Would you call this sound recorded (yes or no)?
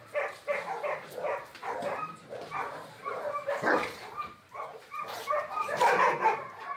no